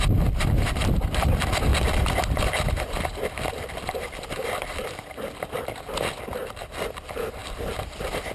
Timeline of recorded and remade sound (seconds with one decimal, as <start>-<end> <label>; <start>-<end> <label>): 0.0-1.7 recorded; 1.7-5.8 remade; 5.8-6.4 recorded; 6.4-6.9 remade; 6.9-7.4 recorded; 7.4-8.3 remade